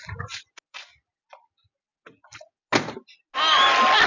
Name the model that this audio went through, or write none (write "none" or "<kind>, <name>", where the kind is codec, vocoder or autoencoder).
none